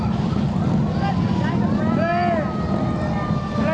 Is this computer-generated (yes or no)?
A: no